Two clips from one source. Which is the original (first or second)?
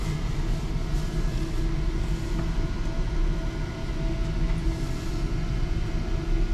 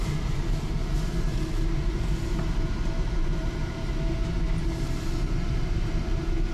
first